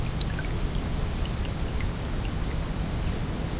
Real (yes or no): yes